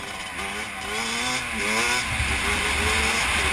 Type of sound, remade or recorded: recorded